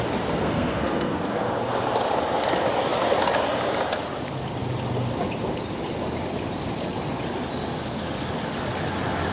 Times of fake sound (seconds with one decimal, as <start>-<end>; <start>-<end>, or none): 0.4-1.7